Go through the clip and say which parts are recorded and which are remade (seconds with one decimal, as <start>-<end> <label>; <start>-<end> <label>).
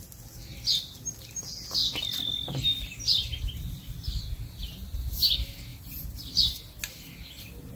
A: 0.0-7.8 recorded